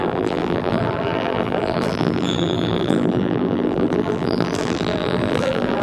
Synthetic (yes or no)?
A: yes